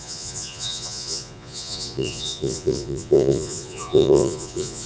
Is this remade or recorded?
remade